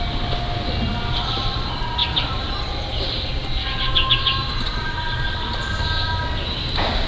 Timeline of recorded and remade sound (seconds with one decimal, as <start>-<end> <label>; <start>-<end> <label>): 0.0-2.0 recorded; 2.0-2.6 remade; 2.6-4.4 recorded; 4.4-5.7 remade; 5.7-7.1 recorded